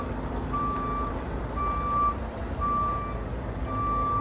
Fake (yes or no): no